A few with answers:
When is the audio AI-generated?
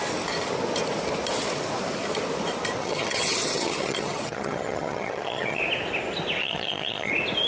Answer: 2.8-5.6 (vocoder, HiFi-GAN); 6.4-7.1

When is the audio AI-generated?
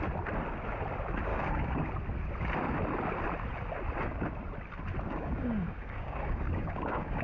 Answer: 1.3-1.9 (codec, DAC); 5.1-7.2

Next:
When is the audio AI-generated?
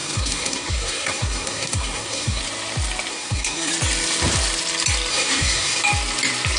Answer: 0.0-2.4 (codec, SNAC); 3.1-3.7; 5.1-5.8